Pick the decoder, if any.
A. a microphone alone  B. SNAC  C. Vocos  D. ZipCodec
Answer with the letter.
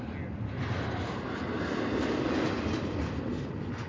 A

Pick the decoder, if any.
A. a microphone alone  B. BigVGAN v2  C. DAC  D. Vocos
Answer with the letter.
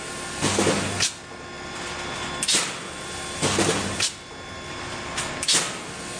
A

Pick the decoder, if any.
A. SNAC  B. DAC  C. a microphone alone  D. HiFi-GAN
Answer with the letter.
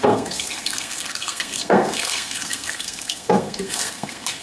A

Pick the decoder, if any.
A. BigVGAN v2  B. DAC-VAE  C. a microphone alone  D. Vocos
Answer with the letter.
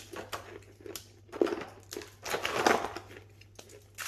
C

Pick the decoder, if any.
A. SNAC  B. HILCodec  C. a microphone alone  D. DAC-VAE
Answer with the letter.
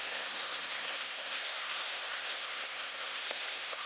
A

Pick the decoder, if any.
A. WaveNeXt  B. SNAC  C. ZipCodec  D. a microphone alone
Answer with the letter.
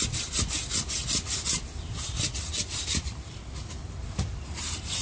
D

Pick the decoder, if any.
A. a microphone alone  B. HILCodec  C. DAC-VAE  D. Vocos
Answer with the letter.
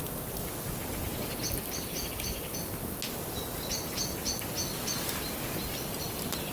A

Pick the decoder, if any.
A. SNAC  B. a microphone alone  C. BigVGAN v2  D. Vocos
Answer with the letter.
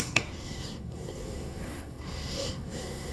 A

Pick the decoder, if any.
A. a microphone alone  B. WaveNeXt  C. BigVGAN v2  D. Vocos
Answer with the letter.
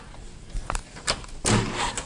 A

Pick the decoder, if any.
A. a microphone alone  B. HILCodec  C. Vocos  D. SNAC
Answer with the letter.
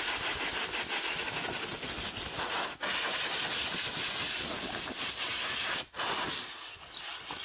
A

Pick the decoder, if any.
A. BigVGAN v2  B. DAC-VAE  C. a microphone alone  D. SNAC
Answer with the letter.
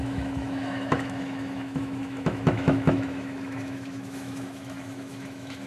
B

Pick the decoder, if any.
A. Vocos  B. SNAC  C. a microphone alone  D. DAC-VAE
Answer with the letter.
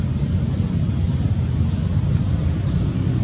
C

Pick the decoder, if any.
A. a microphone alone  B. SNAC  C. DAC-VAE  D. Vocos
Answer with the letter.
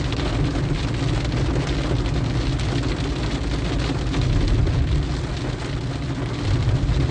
A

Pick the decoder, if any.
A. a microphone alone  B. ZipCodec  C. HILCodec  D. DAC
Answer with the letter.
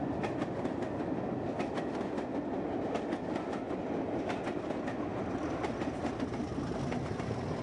A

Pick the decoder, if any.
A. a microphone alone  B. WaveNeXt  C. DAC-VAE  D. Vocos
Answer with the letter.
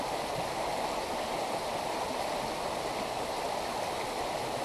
A